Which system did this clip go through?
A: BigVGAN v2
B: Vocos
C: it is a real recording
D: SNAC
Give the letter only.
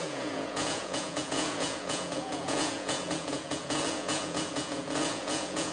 B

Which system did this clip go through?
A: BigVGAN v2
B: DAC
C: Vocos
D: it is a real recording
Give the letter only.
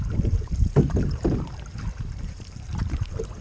A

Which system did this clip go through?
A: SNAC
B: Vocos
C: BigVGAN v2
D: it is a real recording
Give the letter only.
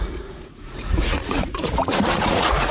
B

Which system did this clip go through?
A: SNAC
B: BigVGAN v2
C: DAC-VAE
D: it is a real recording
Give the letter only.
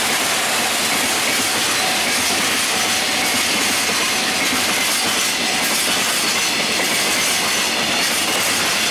D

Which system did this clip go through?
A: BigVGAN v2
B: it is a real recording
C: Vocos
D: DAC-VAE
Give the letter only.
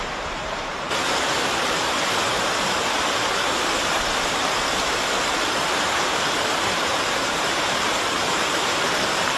A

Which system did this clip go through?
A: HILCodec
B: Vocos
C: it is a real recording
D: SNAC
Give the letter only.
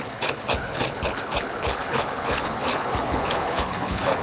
A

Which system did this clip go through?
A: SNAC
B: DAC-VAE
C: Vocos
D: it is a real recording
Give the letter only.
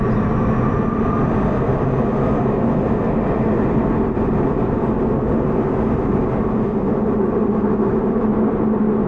D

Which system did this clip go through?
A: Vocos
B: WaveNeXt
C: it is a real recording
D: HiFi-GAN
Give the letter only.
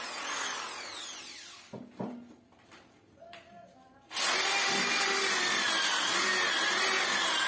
C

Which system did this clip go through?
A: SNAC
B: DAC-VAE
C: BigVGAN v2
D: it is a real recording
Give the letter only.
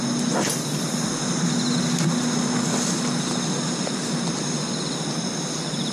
D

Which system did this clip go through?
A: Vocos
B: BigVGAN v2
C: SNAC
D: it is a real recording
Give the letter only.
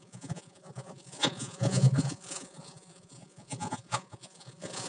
A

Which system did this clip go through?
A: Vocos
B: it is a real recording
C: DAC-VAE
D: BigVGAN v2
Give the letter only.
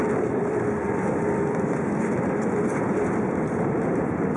D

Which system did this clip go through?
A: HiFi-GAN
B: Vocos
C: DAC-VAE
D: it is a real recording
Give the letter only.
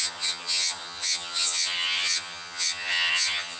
A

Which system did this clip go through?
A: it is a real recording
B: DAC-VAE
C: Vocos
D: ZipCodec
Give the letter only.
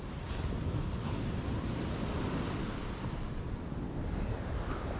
A